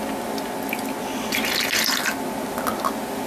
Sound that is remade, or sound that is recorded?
recorded